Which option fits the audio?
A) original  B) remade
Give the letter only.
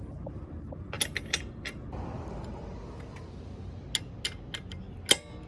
A